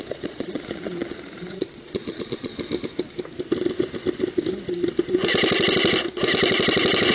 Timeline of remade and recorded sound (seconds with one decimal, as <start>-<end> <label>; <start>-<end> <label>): 0.0-2.5 remade; 2.5-7.1 recorded